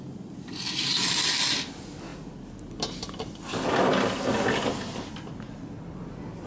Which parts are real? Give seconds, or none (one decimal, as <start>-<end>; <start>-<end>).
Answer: 0.0-6.5